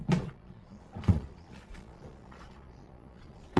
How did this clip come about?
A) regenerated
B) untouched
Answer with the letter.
A